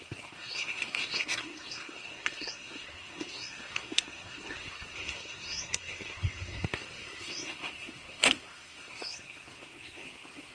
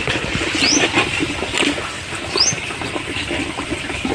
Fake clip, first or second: first